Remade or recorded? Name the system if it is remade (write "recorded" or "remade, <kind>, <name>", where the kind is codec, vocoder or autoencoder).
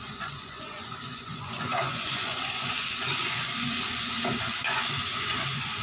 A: remade, vocoder, Vocos